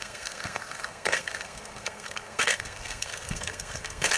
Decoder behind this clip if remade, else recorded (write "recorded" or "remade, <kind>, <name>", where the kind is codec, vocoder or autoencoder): remade, codec, SNAC